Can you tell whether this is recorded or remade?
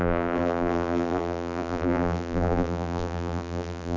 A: remade